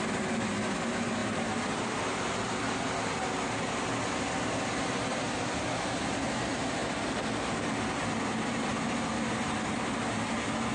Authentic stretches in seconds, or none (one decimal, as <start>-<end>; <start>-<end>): 0.0-10.7